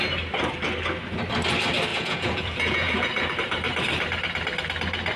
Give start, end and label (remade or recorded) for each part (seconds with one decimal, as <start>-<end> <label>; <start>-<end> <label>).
0.0-1.9 recorded; 1.9-3.3 remade; 3.3-5.2 recorded